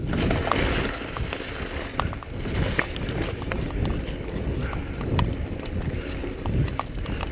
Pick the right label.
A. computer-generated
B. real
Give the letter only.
B